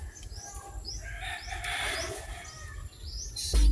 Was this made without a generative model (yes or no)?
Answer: yes